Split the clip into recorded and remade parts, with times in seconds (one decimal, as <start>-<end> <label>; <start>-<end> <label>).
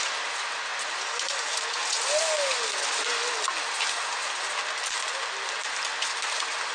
0.0-6.7 recorded